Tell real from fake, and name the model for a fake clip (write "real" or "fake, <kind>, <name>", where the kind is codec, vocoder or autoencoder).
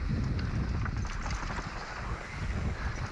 real